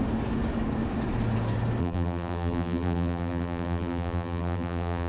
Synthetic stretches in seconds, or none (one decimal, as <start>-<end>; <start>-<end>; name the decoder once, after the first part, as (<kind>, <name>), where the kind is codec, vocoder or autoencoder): 1.8-5.1 (vocoder, BigVGAN v2)